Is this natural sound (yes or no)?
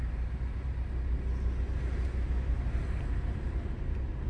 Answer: yes